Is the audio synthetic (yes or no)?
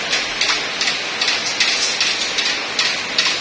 no